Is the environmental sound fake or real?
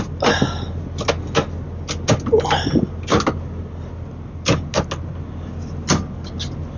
real